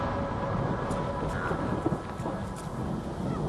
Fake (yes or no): no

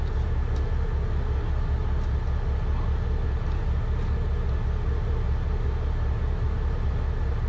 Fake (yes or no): no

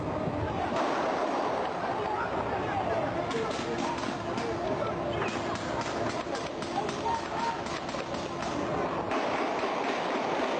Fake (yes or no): no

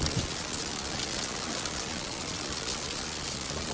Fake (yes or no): yes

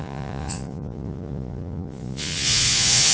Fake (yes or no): yes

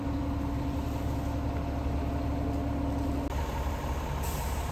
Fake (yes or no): no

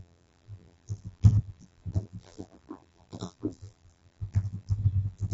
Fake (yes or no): yes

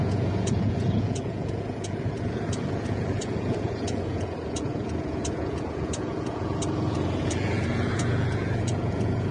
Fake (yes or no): yes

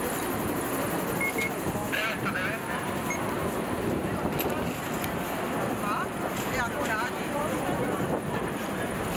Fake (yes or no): no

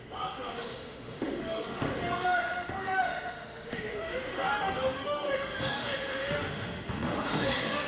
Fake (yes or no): yes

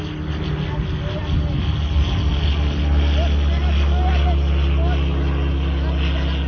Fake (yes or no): no